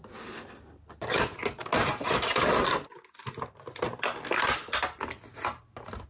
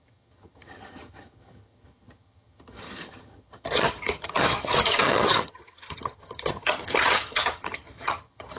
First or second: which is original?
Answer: first